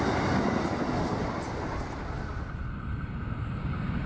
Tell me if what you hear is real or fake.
real